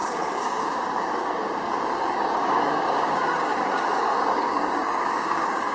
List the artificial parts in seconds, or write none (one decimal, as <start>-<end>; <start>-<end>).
0.0-5.7